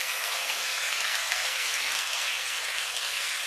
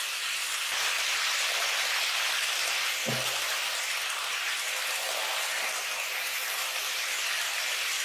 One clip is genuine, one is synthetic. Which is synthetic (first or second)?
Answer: first